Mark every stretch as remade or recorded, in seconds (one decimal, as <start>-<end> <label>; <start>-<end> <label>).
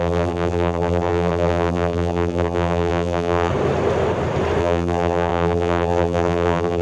0.0-3.5 remade; 3.5-4.6 recorded; 4.6-6.8 remade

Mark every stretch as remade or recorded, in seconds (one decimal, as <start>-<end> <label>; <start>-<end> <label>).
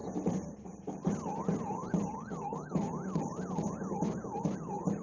0.0-1.0 remade; 1.0-1.8 recorded; 1.8-5.0 remade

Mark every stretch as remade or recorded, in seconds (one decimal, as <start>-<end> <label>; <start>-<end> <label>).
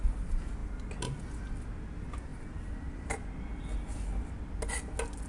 0.0-5.3 recorded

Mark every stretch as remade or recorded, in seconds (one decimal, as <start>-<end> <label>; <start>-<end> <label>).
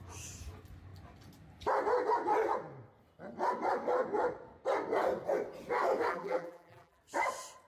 0.0-6.1 recorded; 6.1-7.0 remade; 7.0-7.7 recorded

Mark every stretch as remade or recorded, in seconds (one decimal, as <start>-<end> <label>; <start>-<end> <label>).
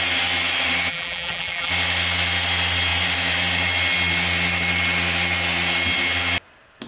0.0-0.9 recorded; 0.9-1.7 remade; 1.7-6.9 recorded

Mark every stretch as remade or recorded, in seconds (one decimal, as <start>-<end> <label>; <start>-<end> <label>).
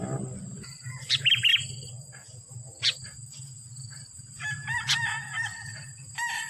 0.0-6.5 recorded